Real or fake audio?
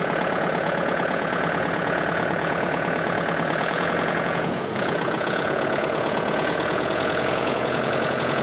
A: fake